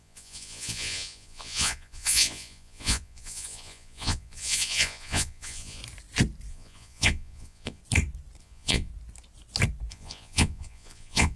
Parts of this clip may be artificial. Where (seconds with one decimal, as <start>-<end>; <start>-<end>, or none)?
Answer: 0.0-5.8; 6.5-7.8; 8.4-8.9; 9.9-11.4